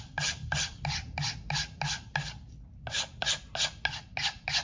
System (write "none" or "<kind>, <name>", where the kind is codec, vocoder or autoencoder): none